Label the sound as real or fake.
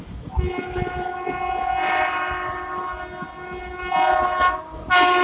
real